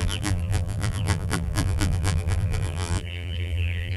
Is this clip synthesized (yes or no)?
yes